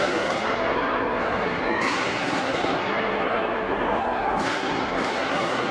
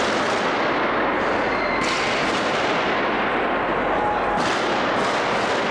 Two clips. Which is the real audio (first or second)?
second